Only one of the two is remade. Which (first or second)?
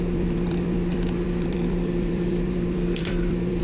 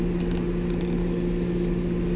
first